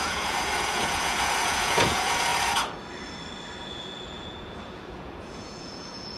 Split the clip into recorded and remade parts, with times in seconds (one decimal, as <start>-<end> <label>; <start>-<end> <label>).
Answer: 0.0-2.3 remade; 2.3-3.6 recorded; 3.6-6.2 remade